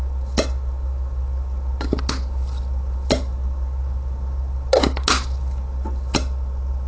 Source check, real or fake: real